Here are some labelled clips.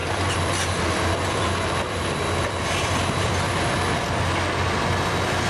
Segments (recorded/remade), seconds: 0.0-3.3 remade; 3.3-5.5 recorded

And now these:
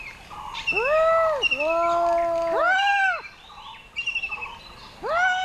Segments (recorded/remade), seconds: 0.0-5.4 recorded

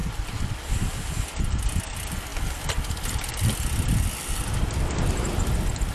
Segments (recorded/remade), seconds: 0.0-5.9 recorded

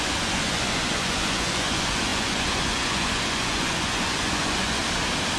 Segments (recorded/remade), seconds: 0.0-4.8 remade; 4.8-5.4 recorded

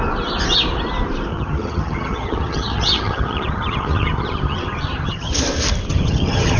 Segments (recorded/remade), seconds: 0.0-1.3 recorded; 1.3-5.3 remade; 5.3-5.9 recorded; 5.9-6.6 remade

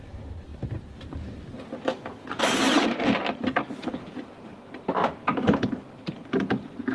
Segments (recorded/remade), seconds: 0.0-0.5 remade; 0.5-2.4 recorded; 2.4-6.9 remade

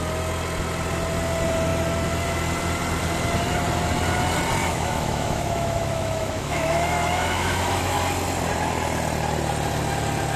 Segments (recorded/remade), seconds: 0.0-4.6 recorded; 4.6-8.0 remade; 8.0-10.4 recorded